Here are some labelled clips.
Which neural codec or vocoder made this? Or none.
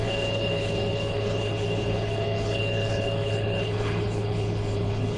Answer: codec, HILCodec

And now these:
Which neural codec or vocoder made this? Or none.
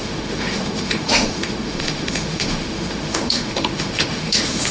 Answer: autoencoder, DAC-VAE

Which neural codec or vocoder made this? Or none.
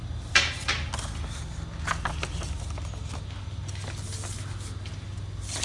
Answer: none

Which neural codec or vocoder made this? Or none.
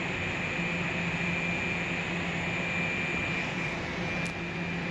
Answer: none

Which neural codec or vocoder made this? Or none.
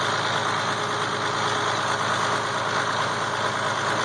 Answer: none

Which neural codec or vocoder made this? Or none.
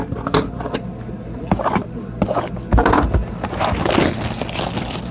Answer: none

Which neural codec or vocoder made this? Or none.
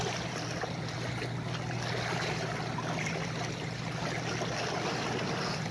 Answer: none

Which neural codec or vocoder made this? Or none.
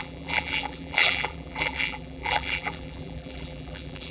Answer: vocoder, BigVGAN v2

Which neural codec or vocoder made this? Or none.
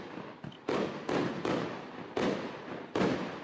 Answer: none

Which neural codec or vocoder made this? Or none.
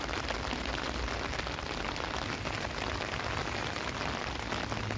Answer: none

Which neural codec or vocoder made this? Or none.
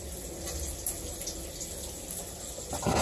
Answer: none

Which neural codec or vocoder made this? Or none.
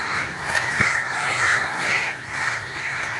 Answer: codec, SNAC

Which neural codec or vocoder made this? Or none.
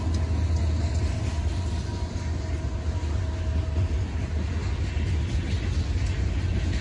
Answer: none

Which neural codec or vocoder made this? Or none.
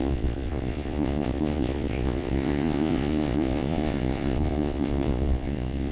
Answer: vocoder, Vocos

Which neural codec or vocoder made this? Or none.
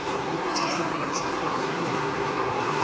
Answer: codec, SNAC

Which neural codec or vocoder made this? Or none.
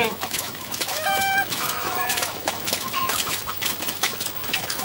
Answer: autoencoder, DAC-VAE